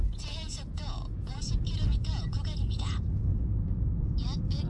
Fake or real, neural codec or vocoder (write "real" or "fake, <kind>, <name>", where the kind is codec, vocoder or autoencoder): fake, vocoder, Vocos